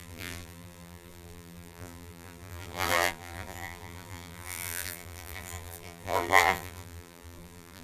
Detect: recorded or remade remade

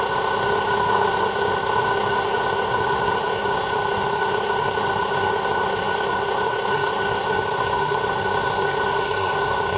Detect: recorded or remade remade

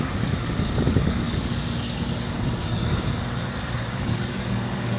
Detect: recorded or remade remade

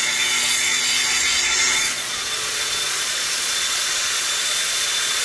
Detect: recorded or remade remade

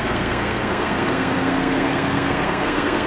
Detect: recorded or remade remade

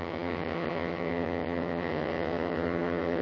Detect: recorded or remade remade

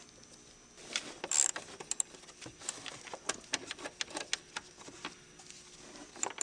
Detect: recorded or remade recorded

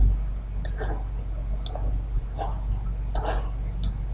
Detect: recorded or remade recorded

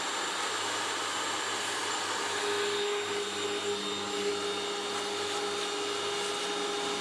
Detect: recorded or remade recorded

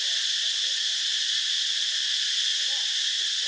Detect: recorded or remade recorded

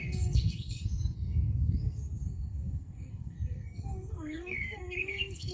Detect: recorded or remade remade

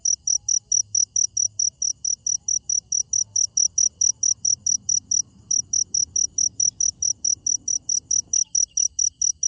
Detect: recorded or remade recorded